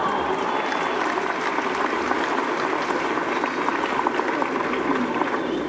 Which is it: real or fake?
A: real